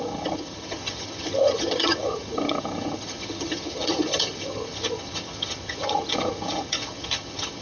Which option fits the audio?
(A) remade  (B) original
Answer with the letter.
A